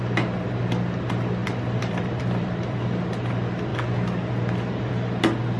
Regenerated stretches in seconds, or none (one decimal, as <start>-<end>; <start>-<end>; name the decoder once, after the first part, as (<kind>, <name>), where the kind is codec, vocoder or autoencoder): 1.4-3.0 (vocoder, BigVGAN v2)